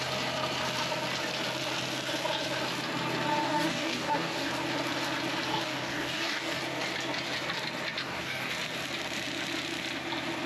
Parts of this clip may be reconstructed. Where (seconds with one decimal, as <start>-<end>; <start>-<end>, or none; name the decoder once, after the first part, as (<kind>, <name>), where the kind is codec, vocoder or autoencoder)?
3.4-4.5 (codec, DAC); 5.5-6.6; 8.0-8.5